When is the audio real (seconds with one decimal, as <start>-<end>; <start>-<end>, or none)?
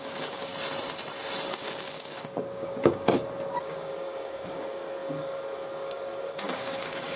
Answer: 0.5-1.5